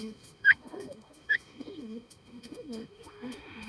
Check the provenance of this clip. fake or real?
fake